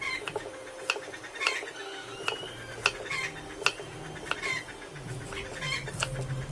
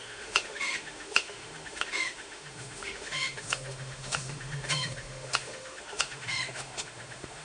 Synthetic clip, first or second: second